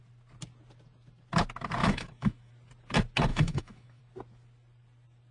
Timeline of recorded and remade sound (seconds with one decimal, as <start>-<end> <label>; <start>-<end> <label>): 0.0-1.8 recorded; 1.8-2.5 remade; 2.5-3.3 recorded; 3.3-4.0 remade; 4.0-5.3 recorded